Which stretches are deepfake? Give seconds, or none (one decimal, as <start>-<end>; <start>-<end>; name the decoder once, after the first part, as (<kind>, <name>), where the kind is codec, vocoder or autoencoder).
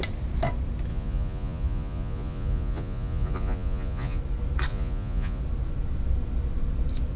0.9-4.2 (vocoder, Vocos); 4.7-5.4